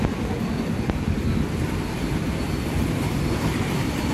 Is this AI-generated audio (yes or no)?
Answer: no